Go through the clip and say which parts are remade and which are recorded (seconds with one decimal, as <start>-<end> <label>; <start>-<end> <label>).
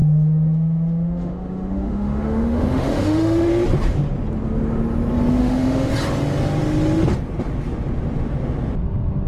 0.0-3.5 remade; 3.5-5.4 recorded; 5.4-5.9 remade; 5.9-9.3 recorded